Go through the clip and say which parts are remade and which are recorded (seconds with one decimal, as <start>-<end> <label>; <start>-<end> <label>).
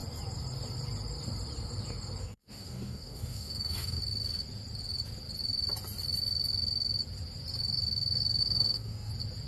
0.0-2.2 recorded; 2.2-4.0 remade; 4.0-8.4 recorded; 8.4-9.1 remade; 9.1-9.5 recorded